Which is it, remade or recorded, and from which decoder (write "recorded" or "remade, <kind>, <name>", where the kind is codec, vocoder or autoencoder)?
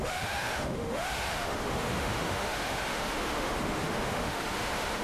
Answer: remade, autoencoder, DAC-VAE